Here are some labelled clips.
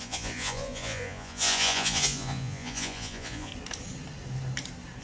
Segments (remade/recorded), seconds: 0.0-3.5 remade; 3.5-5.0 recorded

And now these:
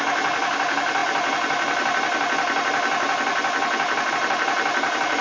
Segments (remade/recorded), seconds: 0.0-5.2 recorded

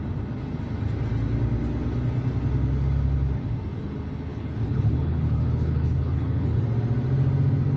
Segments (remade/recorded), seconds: 0.0-4.3 recorded; 4.3-6.6 remade; 6.6-7.8 recorded

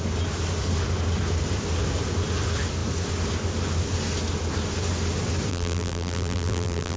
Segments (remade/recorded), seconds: 0.0-5.5 recorded; 5.5-7.0 remade

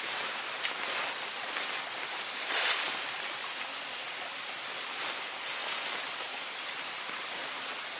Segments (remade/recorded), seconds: 0.0-5.6 recorded; 5.6-6.7 remade; 6.7-8.0 recorded

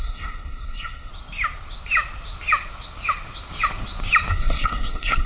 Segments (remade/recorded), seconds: 0.0-1.1 remade; 1.1-4.3 recorded; 4.3-5.3 remade

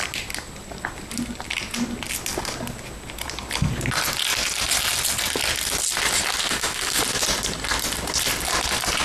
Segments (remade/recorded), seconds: 0.0-6.4 recorded; 6.4-7.0 remade; 7.0-9.0 recorded